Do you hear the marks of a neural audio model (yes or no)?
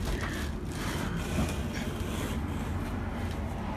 no